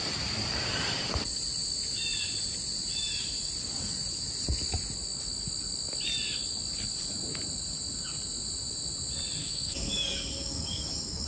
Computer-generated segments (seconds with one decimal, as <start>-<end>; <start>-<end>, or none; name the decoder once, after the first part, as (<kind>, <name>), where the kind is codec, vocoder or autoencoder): 9.4-11.3 (codec, DAC)